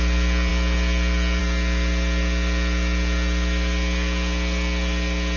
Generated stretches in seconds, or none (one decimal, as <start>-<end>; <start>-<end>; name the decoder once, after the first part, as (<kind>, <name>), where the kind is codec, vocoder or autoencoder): none